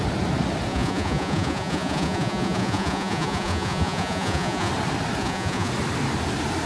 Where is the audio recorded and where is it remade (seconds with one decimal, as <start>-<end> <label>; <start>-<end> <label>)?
0.0-0.7 recorded; 0.7-4.7 remade; 4.7-5.2 recorded; 5.2-5.7 remade; 5.7-6.7 recorded